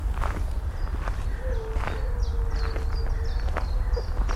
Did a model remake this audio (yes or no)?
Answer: no